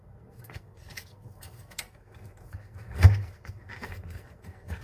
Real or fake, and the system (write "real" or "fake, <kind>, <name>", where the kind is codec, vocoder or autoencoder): fake, codec, SNAC